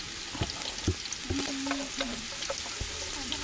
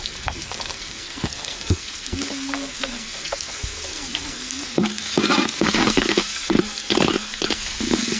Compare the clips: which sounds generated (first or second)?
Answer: second